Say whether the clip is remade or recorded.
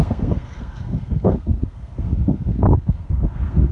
remade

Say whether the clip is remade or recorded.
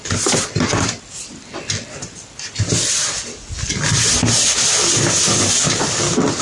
recorded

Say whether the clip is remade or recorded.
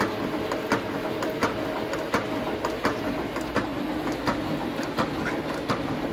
recorded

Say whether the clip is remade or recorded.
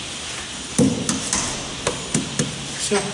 recorded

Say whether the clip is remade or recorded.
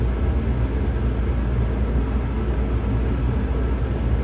recorded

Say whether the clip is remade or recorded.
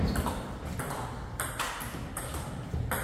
recorded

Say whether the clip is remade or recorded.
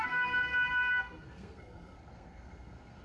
remade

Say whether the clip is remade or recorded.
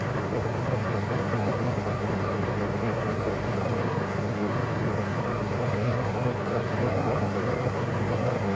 remade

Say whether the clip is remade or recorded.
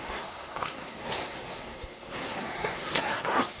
remade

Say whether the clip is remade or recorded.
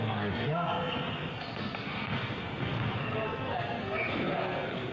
remade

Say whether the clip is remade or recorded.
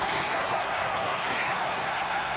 remade